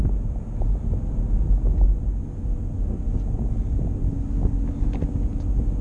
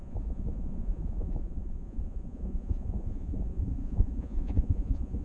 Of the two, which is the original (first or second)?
first